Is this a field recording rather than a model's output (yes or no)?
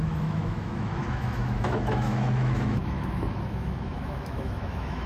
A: no